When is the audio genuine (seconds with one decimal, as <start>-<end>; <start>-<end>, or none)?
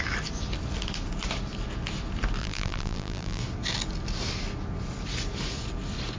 0.0-2.4; 3.4-6.2